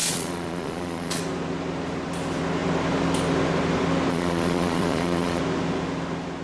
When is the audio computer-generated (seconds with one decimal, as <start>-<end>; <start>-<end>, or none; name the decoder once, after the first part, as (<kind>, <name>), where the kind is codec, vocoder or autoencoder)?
0.0-1.2 (vocoder, Vocos); 4.1-5.4